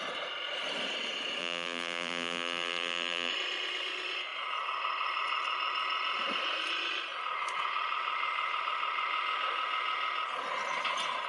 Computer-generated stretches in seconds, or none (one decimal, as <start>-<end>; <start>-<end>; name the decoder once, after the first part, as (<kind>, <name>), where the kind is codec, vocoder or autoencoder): 1.4-3.3 (vocoder, BigVGAN v2)